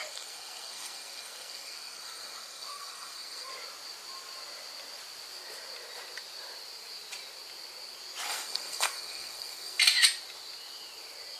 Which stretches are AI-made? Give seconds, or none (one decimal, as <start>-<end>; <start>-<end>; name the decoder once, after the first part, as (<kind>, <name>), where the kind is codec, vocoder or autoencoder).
0.0-3.5 (codec, SNAC); 8.3-9.8